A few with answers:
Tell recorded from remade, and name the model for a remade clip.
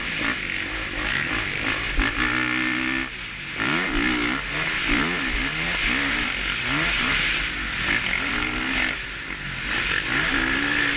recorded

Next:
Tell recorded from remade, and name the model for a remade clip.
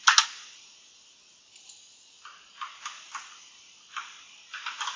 recorded